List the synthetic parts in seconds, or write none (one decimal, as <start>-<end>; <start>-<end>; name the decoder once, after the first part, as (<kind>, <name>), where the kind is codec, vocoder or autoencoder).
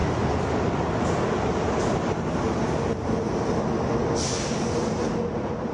none